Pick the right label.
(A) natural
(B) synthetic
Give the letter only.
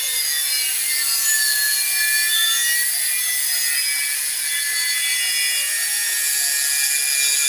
A